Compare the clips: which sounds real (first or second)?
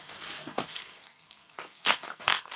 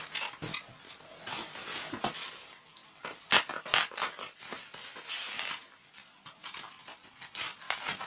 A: second